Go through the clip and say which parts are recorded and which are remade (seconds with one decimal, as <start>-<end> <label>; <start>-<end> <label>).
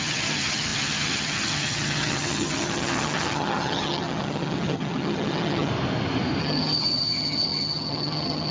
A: 0.0-5.7 remade; 5.7-6.4 recorded; 6.4-8.5 remade